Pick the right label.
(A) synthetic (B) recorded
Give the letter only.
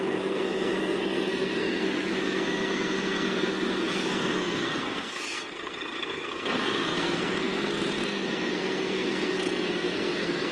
A